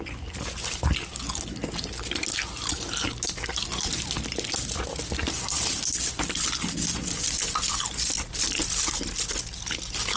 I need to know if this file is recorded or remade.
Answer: recorded